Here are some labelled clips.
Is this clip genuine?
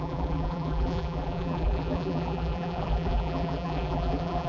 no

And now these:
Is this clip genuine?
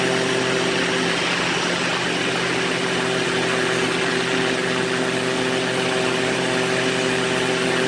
yes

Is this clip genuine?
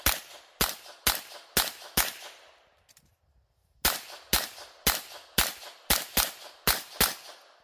yes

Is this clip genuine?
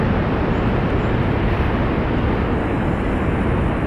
yes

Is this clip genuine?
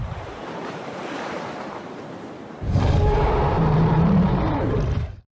no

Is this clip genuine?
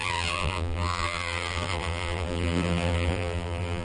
no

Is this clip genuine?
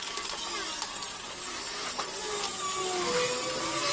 yes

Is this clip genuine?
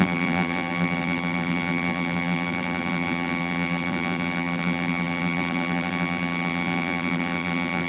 no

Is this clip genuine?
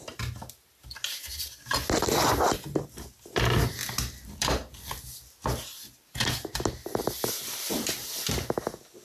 yes